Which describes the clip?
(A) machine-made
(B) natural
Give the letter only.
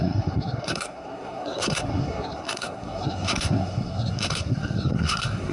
A